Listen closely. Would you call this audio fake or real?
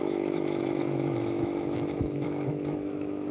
fake